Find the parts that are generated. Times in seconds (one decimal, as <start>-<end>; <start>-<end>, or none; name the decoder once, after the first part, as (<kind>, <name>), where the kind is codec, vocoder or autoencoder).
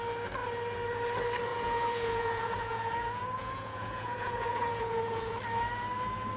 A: 1.5-5.3 (vocoder, Vocos)